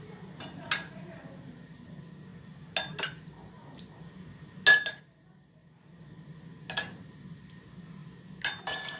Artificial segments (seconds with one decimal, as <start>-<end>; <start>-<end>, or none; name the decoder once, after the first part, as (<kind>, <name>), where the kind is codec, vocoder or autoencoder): none